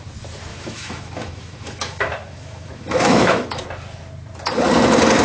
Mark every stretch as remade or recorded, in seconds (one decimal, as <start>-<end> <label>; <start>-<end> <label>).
0.0-0.5 recorded; 0.5-3.6 remade; 3.6-5.2 recorded